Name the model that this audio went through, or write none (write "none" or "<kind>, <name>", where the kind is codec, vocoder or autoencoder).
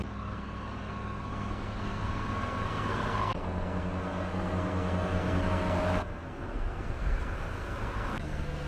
codec, SNAC